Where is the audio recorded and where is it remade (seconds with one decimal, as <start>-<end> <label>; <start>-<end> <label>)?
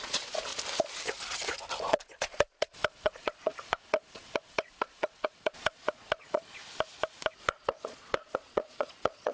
0.0-0.5 remade; 0.5-1.8 recorded; 1.8-6.6 remade; 6.6-7.4 recorded; 7.4-9.3 remade